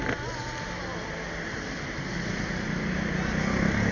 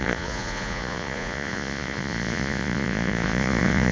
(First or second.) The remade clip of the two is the second